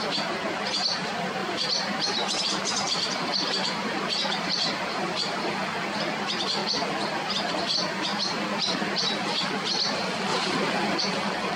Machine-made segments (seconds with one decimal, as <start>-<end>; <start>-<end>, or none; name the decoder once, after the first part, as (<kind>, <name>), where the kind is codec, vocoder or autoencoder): 1.4-5.4 (vocoder, BigVGAN v2); 6.6-7.5; 8.1-9.0; 10.3-11.0